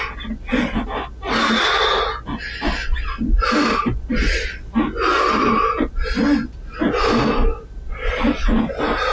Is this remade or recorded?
recorded